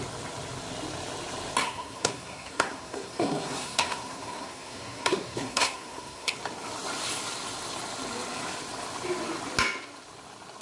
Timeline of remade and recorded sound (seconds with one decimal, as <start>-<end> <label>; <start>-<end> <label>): 0.0-1.6 recorded; 1.6-6.3 remade; 6.3-10.6 recorded